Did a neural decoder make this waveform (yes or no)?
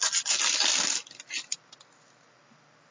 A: no